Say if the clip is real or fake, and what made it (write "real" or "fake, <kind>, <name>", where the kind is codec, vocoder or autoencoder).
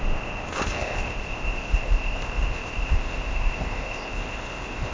fake, codec, ZipCodec